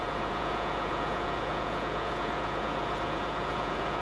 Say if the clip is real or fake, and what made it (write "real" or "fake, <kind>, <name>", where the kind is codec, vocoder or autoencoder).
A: fake, vocoder, Vocos